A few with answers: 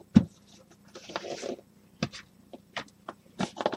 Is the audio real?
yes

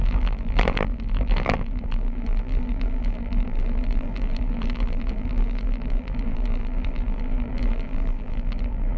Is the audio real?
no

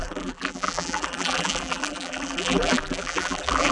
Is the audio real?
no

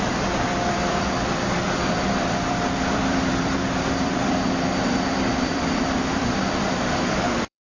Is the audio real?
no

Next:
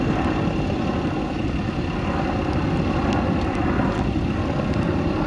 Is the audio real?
yes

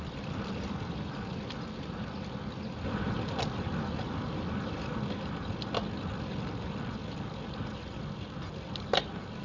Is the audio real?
yes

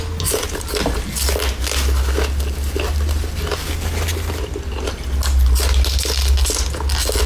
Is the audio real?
yes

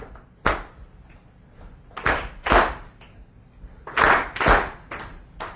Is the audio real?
yes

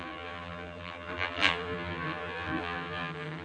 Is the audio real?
no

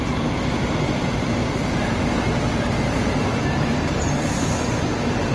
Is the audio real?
yes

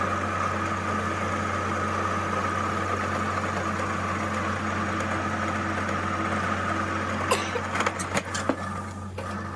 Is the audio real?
yes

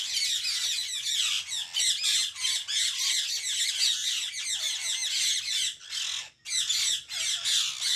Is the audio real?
yes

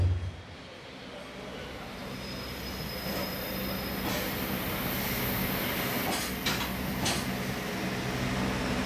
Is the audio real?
yes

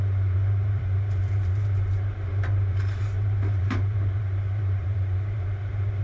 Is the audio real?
no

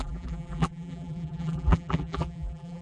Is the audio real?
no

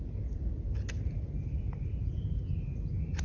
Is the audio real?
yes